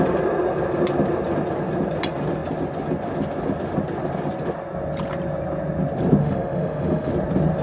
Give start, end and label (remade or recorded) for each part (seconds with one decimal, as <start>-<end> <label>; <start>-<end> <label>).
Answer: 0.0-6.2 recorded; 6.2-7.1 remade; 7.1-7.6 recorded